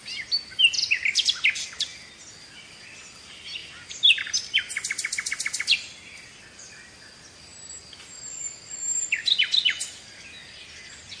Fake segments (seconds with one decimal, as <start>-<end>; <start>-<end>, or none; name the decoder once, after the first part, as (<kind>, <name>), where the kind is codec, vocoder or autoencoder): none